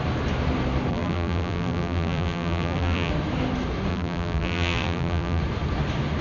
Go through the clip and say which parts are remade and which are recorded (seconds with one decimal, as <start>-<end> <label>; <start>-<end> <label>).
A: 0.0-0.9 recorded; 0.9-3.1 remade; 3.1-3.9 recorded; 3.9-5.4 remade; 5.4-6.2 recorded